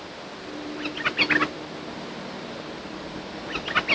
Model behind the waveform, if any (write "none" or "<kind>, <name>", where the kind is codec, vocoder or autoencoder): none